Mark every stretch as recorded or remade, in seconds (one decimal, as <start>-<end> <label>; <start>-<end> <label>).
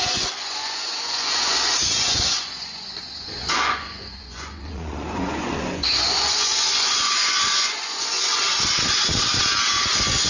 0.0-8.5 remade; 8.5-9.7 recorded; 9.7-10.3 remade